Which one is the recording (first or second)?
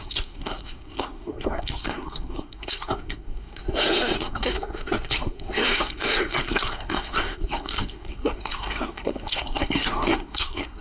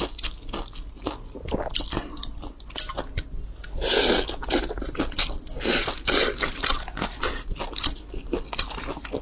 second